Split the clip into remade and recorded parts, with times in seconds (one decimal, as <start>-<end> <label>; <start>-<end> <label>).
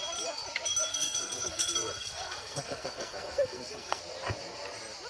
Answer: 0.0-0.9 recorded; 0.9-4.0 remade; 4.0-5.1 recorded